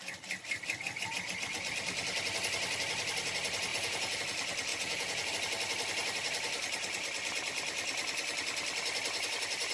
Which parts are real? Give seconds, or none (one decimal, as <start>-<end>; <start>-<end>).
0.0-3.7; 4.2-4.7; 5.3-9.7